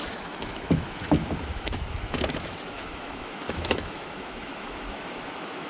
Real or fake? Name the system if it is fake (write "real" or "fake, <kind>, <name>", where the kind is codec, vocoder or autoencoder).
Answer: fake, autoencoder, DAC-VAE